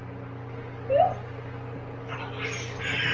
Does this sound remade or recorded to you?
recorded